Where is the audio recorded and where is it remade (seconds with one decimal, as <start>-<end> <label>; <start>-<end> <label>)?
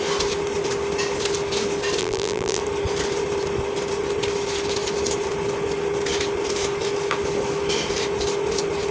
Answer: 0.0-2.0 recorded; 2.0-2.6 remade; 2.6-8.9 recorded